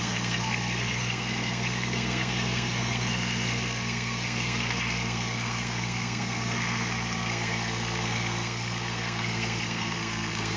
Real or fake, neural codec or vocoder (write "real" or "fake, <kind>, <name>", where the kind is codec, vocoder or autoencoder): fake, codec, SNAC